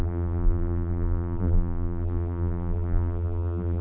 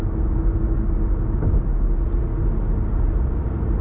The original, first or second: second